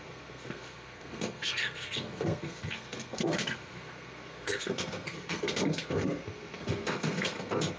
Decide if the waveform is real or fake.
fake